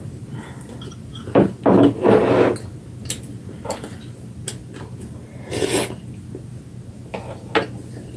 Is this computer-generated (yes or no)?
no